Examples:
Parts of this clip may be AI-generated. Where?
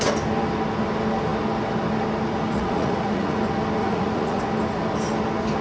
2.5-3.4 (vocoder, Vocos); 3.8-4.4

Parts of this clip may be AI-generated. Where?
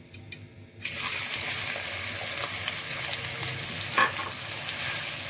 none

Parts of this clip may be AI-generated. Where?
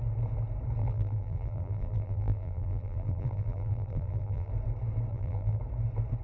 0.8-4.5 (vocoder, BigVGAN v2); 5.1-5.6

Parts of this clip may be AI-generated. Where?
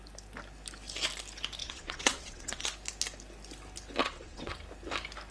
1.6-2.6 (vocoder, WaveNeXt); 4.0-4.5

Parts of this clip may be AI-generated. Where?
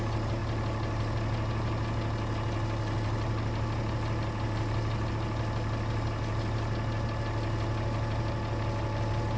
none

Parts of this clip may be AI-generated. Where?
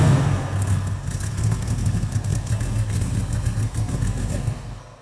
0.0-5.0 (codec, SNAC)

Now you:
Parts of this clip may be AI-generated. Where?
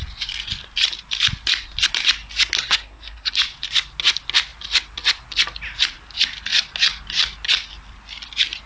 2.6-3.3 (codec, SNAC)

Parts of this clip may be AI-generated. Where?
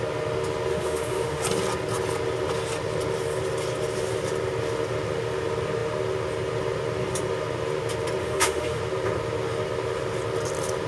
0.7-1.4 (autoencoder, DAC-VAE); 8.2-8.8